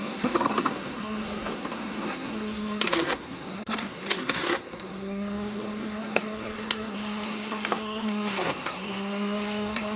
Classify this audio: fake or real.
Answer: fake